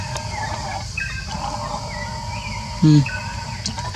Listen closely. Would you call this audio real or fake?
real